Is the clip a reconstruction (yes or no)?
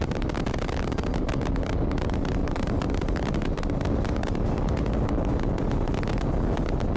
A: no